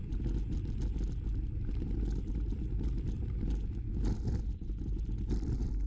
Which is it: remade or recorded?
recorded